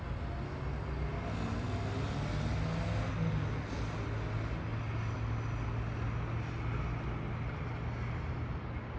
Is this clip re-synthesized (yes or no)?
no